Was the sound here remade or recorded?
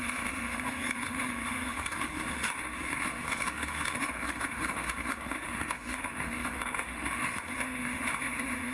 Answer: remade